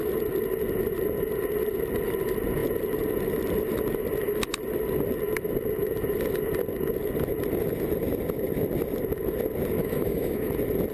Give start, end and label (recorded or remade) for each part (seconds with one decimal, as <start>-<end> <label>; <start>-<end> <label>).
0.0-9.8 recorded; 9.8-10.5 remade; 10.5-10.9 recorded